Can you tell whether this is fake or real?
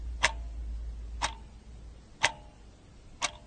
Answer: real